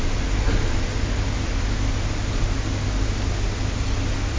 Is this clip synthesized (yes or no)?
no